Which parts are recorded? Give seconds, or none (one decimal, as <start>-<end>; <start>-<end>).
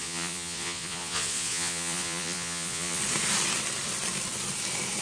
3.0-5.0